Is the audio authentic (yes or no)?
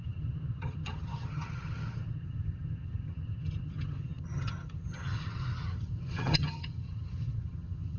no